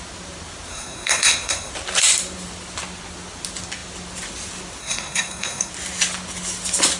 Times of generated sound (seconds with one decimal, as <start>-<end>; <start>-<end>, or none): 0.7-1.7; 4.8-5.7